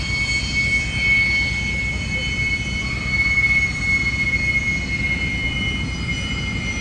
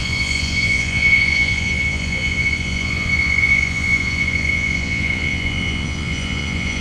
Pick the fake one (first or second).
second